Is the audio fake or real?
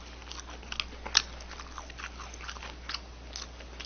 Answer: real